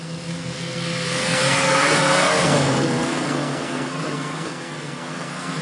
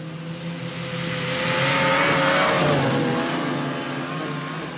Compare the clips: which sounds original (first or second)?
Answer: second